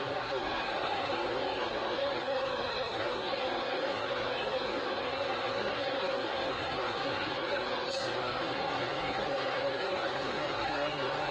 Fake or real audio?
fake